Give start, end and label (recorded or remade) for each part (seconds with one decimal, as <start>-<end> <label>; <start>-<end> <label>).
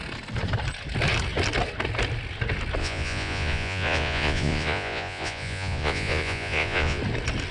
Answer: 0.0-2.8 recorded; 2.8-7.0 remade; 7.0-7.5 recorded